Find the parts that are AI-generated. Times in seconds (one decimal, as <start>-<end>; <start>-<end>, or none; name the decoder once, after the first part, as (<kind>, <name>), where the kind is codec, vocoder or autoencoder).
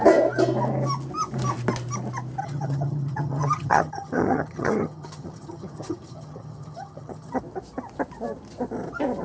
2.4-7.4 (vocoder, HiFi-GAN)